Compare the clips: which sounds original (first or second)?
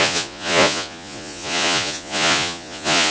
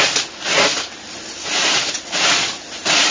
second